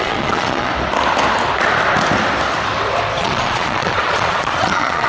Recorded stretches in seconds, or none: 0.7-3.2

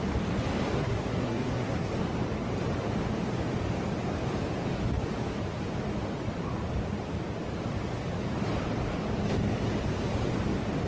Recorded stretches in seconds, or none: 0.0-0.8; 1.9-10.9

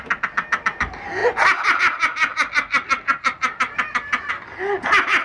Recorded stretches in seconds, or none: 0.0-5.2

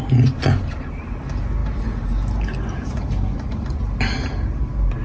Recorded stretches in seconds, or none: 0.0-5.0

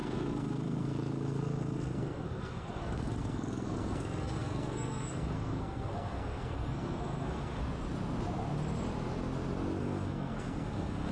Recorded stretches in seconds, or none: 7.6-9.8

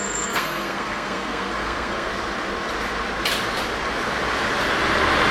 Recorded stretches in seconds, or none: 2.1-5.3